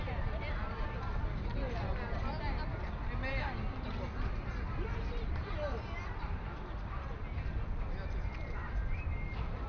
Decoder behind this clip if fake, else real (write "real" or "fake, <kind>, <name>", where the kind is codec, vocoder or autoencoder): real